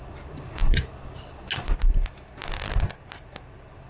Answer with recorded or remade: recorded